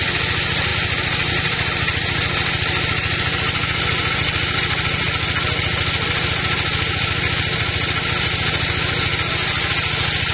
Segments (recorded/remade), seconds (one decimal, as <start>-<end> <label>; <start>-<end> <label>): 0.0-10.3 recorded